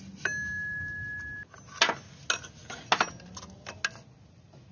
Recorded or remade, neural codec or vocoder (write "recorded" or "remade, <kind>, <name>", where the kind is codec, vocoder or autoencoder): recorded